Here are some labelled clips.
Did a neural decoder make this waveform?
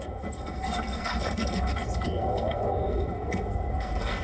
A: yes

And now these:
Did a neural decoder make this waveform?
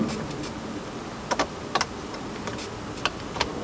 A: no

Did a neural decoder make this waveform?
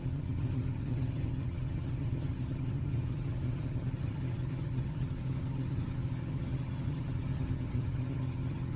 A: yes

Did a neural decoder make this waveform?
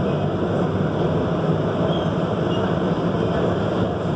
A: no